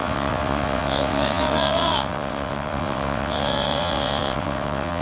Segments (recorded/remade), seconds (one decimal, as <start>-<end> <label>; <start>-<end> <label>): 0.0-5.0 remade